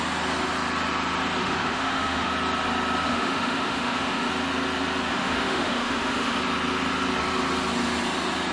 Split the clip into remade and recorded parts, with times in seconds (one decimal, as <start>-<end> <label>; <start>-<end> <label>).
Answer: 0.0-1.4 recorded; 1.4-2.3 remade; 2.3-3.1 recorded; 3.1-4.3 remade; 4.3-5.1 recorded; 5.1-6.4 remade; 6.4-8.5 recorded